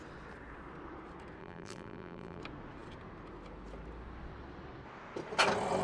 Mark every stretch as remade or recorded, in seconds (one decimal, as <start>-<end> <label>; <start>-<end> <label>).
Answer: 0.0-1.4 recorded; 1.4-2.4 remade; 2.4-5.8 recorded